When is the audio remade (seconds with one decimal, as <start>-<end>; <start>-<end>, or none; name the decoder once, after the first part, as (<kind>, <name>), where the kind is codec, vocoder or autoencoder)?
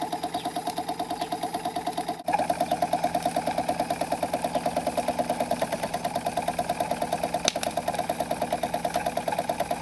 none